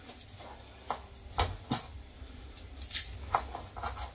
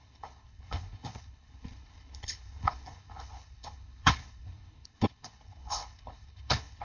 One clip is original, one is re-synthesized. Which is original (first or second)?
first